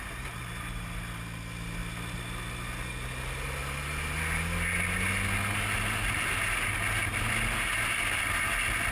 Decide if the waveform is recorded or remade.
recorded